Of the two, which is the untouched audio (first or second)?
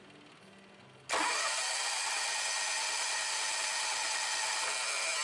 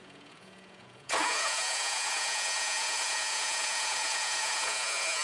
first